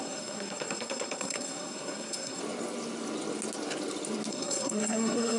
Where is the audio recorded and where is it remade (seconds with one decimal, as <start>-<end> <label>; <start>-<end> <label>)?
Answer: 0.0-2.4 remade; 2.4-4.3 recorded; 4.3-5.4 remade

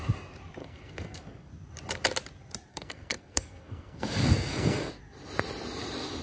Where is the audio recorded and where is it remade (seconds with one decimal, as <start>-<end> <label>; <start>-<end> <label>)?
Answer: 0.0-0.6 recorded; 0.6-1.5 remade; 1.5-2.7 recorded; 2.7-5.0 remade; 5.0-6.2 recorded

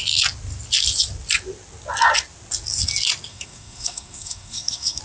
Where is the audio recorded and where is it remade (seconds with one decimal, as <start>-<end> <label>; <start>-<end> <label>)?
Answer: 0.0-3.3 recorded; 3.3-5.0 remade

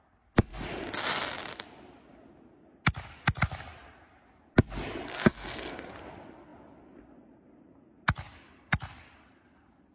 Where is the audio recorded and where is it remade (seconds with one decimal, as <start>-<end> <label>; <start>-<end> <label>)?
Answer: 0.0-5.1 recorded; 5.1-5.9 remade; 5.9-9.9 recorded

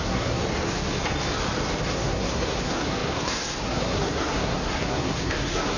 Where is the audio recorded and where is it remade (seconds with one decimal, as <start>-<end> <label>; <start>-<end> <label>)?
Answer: 0.0-0.4 remade; 0.4-1.8 recorded; 1.8-5.8 remade